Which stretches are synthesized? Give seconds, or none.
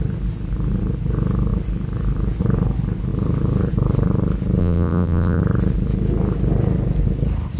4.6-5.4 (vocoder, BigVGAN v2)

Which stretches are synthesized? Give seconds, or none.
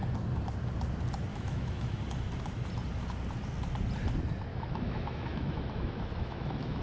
1.3-2.0 (autoencoder, DAC-VAE); 4.5-6.8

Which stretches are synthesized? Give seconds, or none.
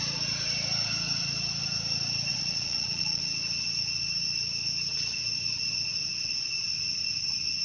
2.3-3.2 (vocoder, Vocos)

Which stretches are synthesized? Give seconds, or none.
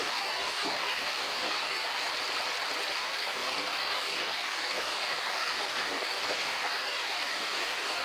0.0-2.1 (codec, DAC); 3.0-8.0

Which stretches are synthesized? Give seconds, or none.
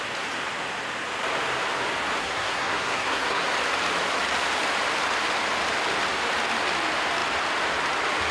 2.2-3.4 (codec, SNAC)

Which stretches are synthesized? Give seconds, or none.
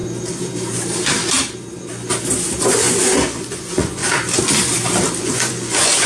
2.6-4.0 (vocoder, Vocos); 5.2-6.1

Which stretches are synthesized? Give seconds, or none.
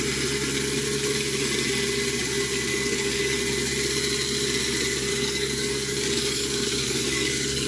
2.7-3.2 (codec, DAC); 5.1-7.7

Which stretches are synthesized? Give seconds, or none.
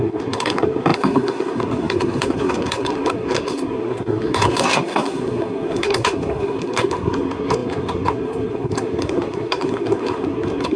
0.0-10.8 (codec, SNAC)